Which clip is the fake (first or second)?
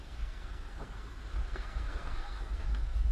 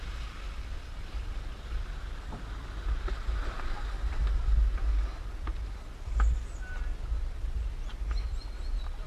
first